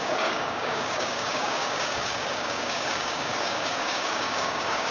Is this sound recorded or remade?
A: remade